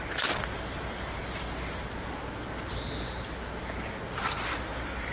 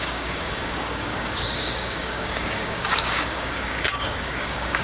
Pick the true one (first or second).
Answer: first